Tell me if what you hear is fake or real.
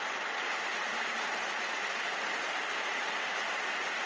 real